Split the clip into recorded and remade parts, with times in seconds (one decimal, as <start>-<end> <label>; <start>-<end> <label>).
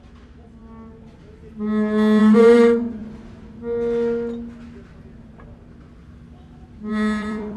0.0-0.6 remade; 0.6-2.2 recorded; 2.2-3.0 remade; 3.0-6.9 recorded; 6.9-7.6 remade